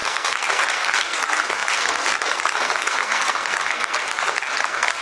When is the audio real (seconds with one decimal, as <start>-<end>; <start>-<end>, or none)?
none